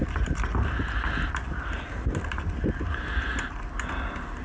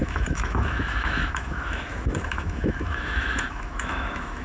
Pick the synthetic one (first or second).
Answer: second